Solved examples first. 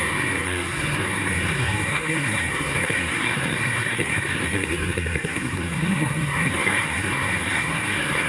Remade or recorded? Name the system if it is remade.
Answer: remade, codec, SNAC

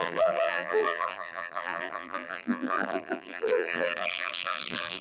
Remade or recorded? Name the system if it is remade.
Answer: remade, vocoder, BigVGAN v2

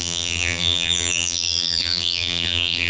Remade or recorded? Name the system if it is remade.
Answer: remade, vocoder, BigVGAN v2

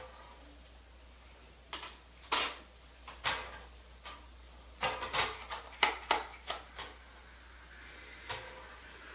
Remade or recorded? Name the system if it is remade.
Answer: recorded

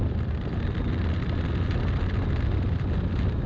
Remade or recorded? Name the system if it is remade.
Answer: recorded